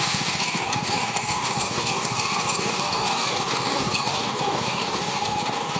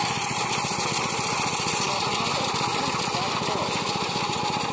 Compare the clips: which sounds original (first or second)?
second